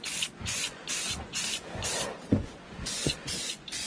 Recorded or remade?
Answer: remade